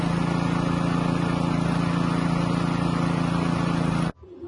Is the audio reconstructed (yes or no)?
no